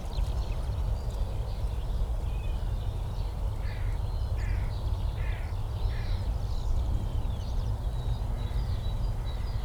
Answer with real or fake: real